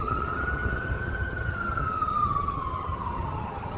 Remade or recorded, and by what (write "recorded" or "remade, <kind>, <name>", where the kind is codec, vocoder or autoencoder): remade, vocoder, HiFi-GAN